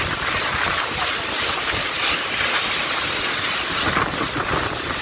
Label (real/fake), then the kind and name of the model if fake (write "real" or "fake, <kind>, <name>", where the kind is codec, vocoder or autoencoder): real